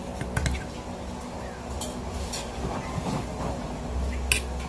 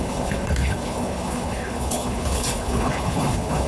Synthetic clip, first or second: second